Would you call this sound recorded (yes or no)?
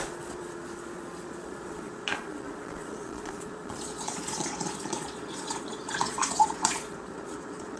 no